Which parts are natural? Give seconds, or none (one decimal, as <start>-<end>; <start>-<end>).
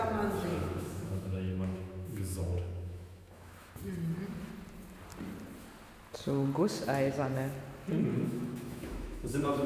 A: 0.0-0.5; 3.7-8.1